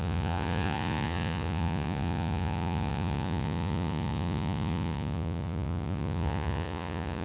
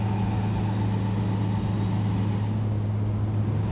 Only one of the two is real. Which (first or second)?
second